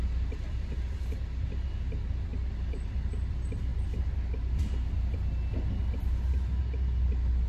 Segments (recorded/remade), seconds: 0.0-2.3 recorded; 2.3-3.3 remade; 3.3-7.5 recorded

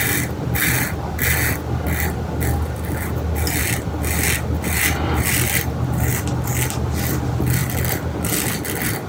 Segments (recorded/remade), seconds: 0.0-9.1 recorded

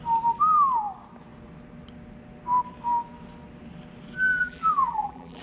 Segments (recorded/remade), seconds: 0.0-4.3 recorded; 4.3-5.4 remade